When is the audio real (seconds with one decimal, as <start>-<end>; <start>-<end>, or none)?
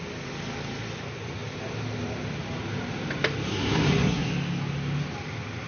0.0-3.5; 4.3-5.7